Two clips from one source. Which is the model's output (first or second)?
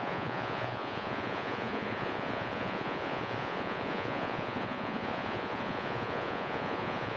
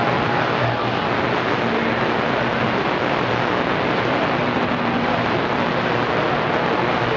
first